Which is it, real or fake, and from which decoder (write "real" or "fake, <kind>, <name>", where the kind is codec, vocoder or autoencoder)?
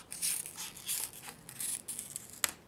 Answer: real